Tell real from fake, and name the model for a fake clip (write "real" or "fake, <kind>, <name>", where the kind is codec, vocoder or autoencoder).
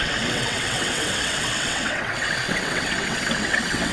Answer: fake, vocoder, WaveNeXt